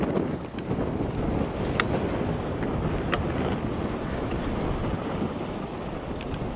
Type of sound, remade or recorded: recorded